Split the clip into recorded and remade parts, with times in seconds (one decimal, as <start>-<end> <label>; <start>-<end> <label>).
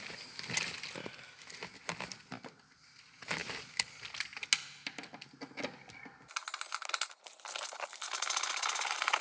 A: 0.0-9.2 recorded